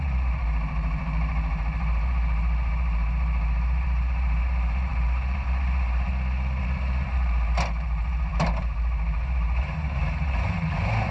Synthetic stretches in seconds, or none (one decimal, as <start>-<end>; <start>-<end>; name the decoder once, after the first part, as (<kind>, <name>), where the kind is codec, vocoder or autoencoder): 0.0-6.1 (vocoder, BigVGAN v2); 6.6-11.1